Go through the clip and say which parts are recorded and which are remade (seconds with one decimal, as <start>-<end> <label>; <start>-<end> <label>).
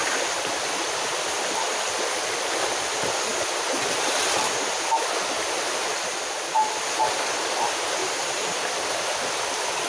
0.0-9.9 recorded